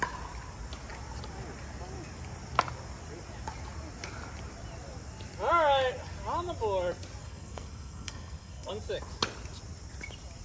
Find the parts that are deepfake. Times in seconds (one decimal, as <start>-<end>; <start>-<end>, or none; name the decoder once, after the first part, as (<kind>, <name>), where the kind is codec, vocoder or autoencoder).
7.2-8.7 (codec, SNAC)